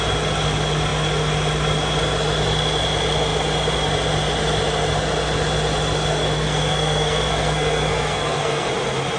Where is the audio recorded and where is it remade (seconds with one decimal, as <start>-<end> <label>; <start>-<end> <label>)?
0.0-6.1 recorded; 6.1-8.7 remade; 8.7-9.2 recorded